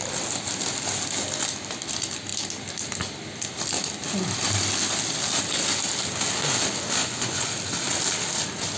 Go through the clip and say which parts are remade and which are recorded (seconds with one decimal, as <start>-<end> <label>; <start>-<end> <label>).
0.0-7.0 recorded; 7.0-7.5 remade; 7.5-8.8 recorded